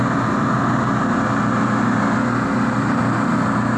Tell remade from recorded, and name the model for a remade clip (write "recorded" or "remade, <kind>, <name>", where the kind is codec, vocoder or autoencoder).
recorded